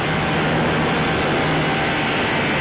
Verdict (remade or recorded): recorded